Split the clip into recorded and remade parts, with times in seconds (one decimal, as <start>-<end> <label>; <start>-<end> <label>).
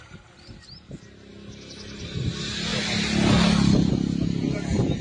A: 0.0-5.0 recorded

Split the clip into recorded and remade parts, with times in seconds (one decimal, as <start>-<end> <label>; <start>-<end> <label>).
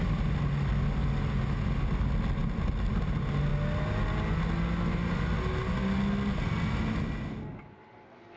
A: 0.0-8.4 recorded